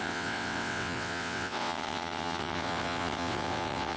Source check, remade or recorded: remade